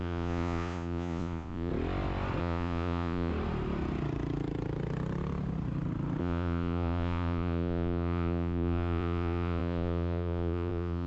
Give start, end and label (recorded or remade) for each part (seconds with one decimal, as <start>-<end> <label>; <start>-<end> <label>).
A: 0.0-1.7 remade; 1.7-2.4 recorded; 2.4-3.3 remade; 3.3-6.2 recorded; 6.2-11.1 remade